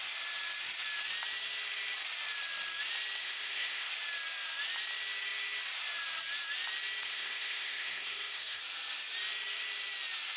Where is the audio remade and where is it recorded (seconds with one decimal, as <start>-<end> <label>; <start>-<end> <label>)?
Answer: 0.0-3.2 recorded; 3.2-3.9 remade; 3.9-7.1 recorded; 7.1-8.6 remade; 8.6-10.4 recorded